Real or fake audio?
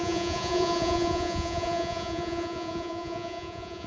fake